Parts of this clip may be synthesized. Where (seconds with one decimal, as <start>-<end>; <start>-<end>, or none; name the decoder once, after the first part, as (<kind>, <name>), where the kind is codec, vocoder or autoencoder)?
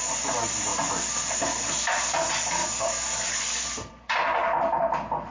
none